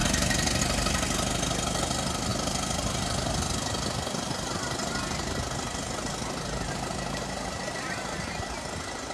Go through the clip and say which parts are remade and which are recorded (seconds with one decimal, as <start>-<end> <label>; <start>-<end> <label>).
0.0-9.1 recorded